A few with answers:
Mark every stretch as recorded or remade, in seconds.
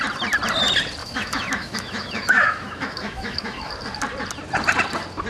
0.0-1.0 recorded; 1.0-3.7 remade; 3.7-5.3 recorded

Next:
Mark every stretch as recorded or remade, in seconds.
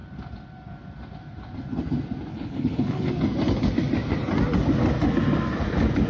0.0-2.3 recorded; 2.3-3.1 remade; 3.1-6.1 recorded